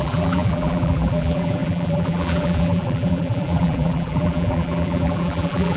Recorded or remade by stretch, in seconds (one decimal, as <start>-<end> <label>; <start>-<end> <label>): 0.0-5.8 remade